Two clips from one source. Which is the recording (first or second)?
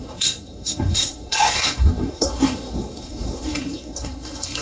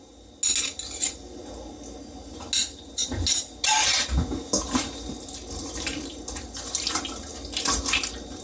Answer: second